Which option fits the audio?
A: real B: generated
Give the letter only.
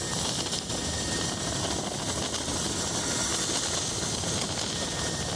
A